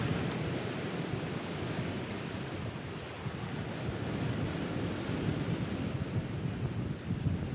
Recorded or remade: recorded